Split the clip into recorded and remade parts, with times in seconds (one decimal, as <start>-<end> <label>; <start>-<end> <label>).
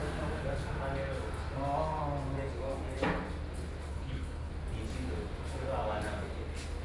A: 0.0-3.9 recorded; 3.9-4.5 remade; 4.5-6.8 recorded